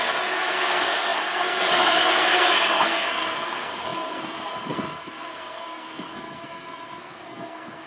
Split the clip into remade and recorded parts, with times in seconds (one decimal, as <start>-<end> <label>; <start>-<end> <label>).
0.0-7.9 remade